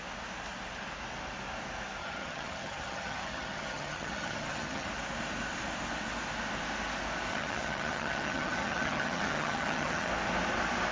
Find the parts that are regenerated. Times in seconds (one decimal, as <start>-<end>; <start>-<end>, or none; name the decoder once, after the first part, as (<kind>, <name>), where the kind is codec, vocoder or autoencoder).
2.0-4.9 (vocoder, HiFi-GAN); 7.3-10.1